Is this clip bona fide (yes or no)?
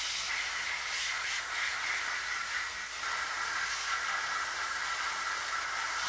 yes